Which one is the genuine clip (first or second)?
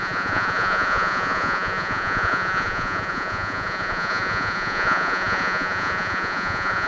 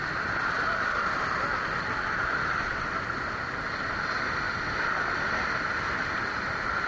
second